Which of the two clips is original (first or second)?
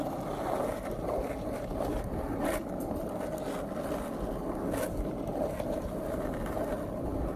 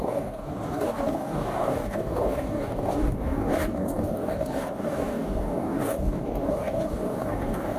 first